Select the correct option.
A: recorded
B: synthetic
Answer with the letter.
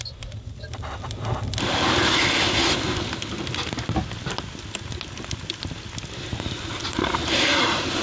A